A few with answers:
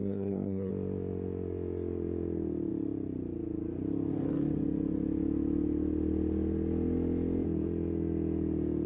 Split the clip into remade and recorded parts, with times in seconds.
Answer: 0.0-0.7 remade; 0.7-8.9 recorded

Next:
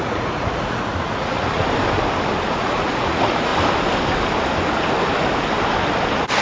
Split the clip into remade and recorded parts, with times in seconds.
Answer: 0.0-1.6 remade; 1.6-2.5 recorded; 2.5-3.5 remade; 3.5-6.4 recorded